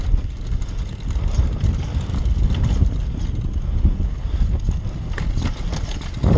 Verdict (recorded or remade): recorded